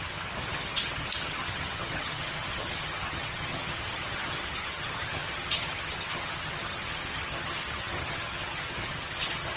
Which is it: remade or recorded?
remade